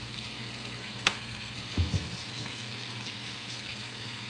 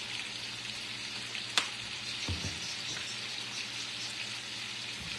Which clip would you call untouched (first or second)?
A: second